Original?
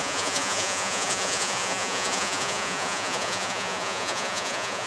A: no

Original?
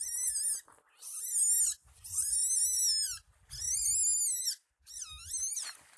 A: yes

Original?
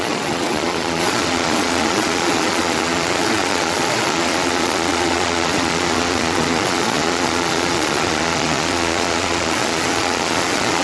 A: no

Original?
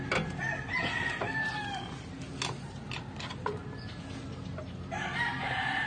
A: yes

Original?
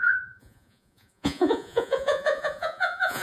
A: no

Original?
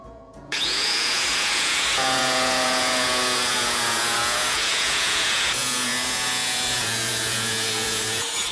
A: no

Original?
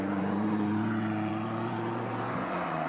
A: no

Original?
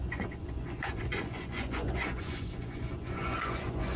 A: no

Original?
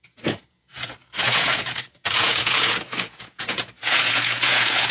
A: no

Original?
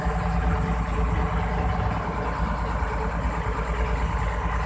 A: yes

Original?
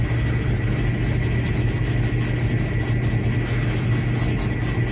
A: yes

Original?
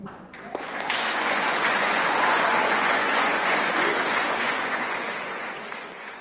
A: no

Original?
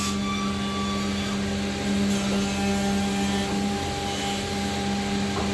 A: yes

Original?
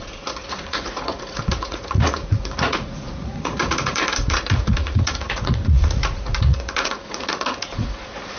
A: no